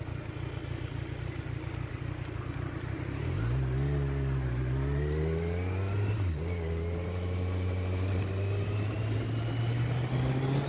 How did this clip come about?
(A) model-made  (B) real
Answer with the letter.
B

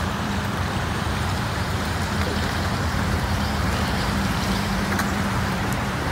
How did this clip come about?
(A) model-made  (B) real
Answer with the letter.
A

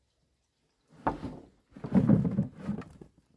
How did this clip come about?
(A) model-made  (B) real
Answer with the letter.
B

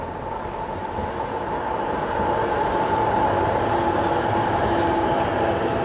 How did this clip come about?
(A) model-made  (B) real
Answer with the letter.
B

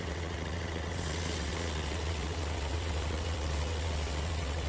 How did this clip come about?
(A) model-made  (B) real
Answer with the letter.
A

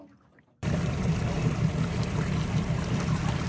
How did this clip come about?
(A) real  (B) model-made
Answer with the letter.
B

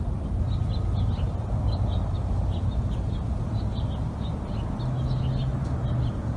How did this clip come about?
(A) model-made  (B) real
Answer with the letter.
B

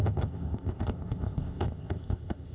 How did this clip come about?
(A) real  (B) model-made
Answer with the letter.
B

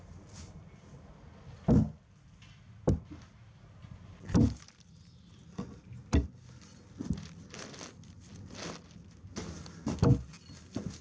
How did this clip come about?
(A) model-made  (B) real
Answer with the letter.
B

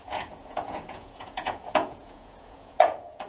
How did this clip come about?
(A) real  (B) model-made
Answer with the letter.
B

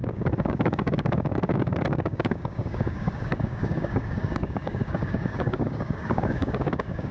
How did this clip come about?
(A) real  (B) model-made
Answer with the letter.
B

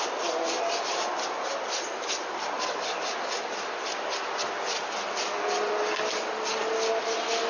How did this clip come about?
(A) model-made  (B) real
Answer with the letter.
B